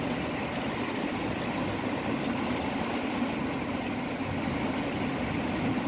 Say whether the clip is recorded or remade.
recorded